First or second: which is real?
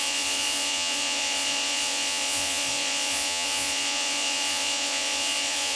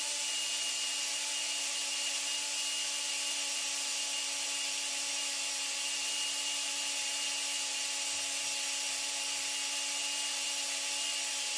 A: second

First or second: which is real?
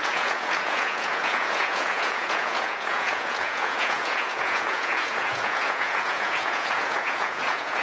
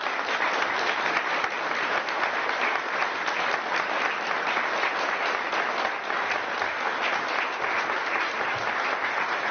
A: second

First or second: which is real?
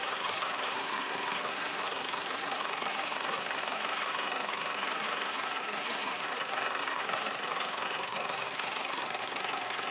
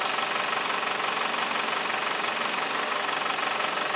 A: second